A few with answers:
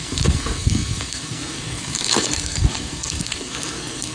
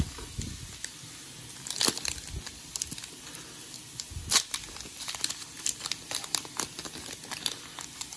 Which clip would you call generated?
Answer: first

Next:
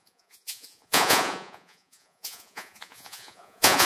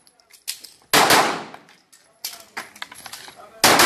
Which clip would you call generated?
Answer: first